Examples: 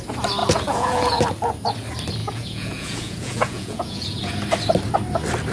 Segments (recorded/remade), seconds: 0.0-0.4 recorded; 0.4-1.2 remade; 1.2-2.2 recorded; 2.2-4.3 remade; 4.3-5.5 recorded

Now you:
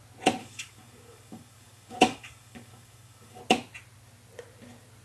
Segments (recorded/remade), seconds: 0.0-0.4 recorded; 0.4-3.4 remade; 3.4-5.0 recorded